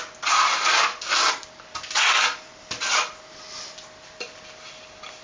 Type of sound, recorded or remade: recorded